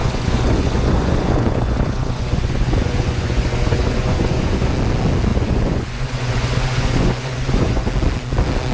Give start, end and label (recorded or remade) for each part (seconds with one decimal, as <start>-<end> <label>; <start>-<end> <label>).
0.0-4.7 remade; 4.7-5.3 recorded; 5.3-7.9 remade; 7.9-8.7 recorded